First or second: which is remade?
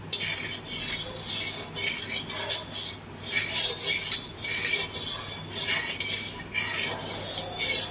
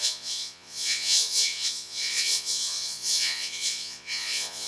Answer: second